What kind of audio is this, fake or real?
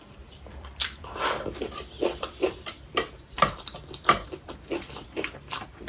fake